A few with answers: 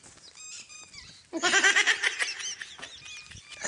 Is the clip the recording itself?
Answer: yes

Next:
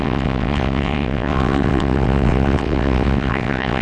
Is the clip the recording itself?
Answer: no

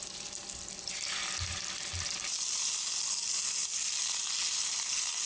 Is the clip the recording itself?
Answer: yes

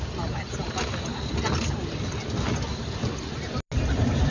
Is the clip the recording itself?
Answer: yes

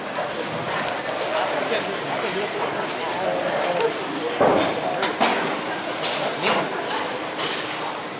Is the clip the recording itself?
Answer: yes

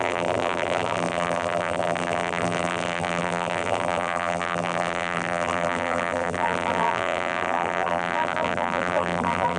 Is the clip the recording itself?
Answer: no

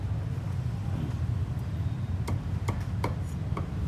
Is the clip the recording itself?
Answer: yes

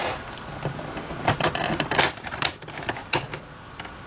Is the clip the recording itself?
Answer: yes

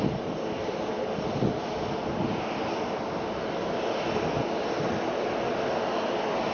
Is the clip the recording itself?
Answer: yes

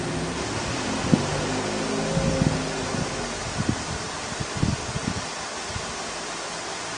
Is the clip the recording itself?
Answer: yes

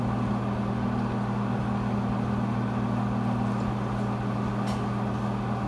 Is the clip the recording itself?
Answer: yes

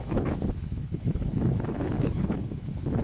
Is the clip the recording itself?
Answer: no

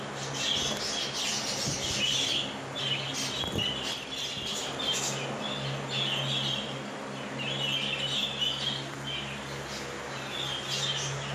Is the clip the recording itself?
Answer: yes